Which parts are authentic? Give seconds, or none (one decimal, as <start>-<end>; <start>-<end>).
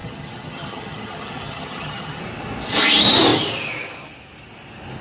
2.2-5.0